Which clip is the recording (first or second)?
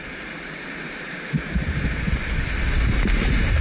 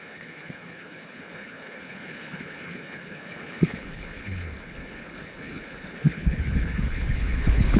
first